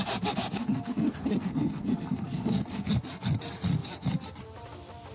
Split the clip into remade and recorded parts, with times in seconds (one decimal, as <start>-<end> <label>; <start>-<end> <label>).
0.0-0.6 recorded; 0.6-2.9 remade; 2.9-5.1 recorded